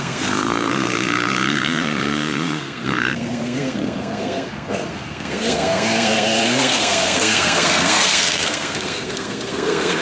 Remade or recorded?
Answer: remade